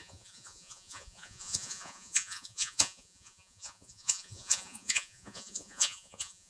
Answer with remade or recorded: remade